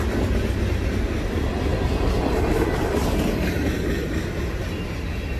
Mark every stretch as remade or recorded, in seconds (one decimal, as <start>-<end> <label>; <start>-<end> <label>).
0.0-5.4 recorded